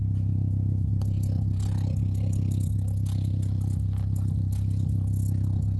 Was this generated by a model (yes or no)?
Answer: no